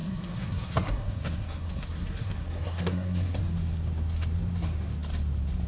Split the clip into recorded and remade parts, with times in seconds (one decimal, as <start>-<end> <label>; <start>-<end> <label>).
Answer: 0.0-3.4 remade; 3.4-5.7 recorded